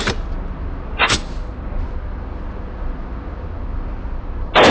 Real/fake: real